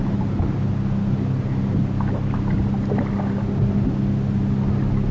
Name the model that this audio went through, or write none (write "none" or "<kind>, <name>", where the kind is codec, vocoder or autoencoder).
none